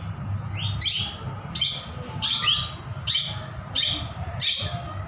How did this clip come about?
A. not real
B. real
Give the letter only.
B